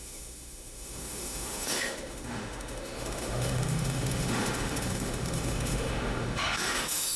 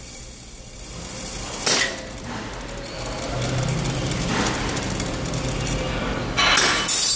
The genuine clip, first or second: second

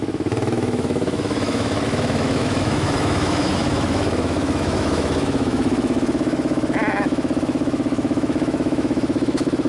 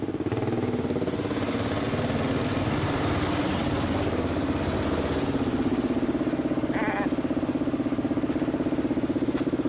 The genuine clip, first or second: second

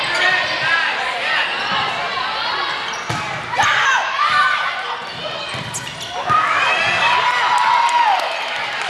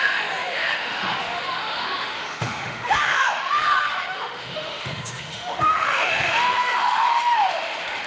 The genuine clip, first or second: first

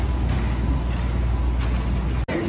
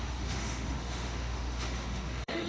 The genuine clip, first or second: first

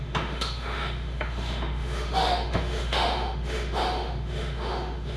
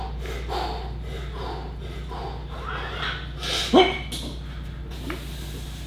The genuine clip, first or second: second